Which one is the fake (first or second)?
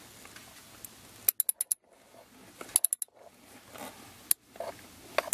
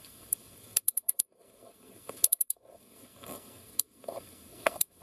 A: second